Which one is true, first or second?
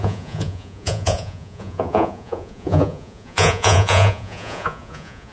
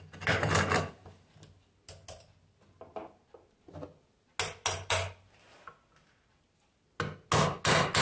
second